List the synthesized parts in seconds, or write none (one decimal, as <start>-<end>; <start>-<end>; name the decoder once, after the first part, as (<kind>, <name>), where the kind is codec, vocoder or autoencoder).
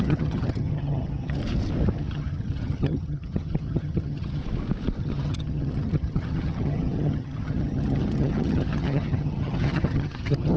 0.0-1.4 (vocoder, HiFi-GAN); 2.0-4.4; 5.0-10.6